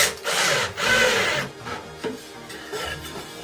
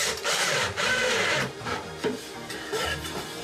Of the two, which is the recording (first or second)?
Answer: first